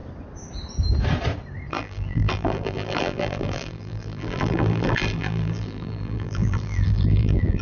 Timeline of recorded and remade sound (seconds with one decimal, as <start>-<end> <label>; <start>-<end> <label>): 0.0-1.7 recorded; 1.7-7.6 remade